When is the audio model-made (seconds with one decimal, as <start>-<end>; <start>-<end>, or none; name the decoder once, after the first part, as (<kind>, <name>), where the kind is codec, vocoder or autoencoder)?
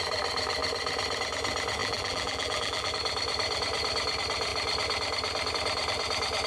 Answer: 1.8-2.9 (vocoder, BigVGAN v2)